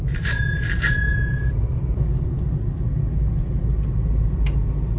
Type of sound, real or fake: real